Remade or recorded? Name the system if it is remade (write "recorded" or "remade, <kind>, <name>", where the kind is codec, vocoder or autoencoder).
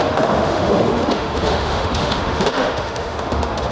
remade, autoencoder, DAC-VAE